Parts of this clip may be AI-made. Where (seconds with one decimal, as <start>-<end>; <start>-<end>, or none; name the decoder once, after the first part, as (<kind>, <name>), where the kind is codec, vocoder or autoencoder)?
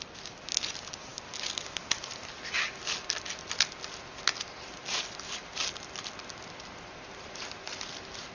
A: none